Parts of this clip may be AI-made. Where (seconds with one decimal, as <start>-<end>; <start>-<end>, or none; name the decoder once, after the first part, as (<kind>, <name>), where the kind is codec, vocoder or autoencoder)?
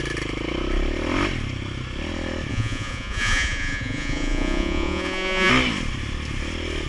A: 2.5-5.5 (vocoder, Vocos)